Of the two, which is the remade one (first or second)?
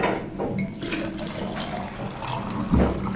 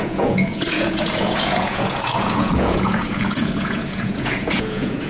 second